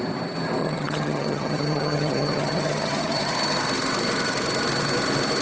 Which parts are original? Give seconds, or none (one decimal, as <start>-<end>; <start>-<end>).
0.0-0.6; 3.3-5.4